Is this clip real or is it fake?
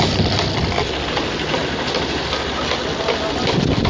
real